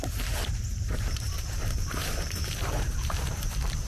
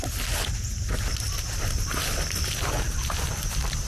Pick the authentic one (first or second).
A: second